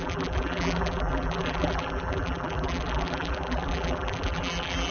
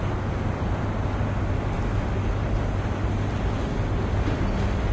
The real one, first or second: second